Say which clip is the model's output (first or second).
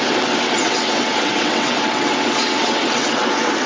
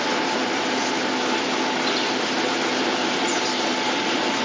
first